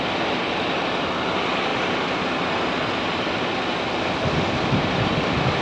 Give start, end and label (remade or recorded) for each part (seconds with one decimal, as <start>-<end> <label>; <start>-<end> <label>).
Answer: 0.0-5.6 recorded